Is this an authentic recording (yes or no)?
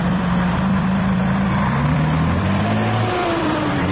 no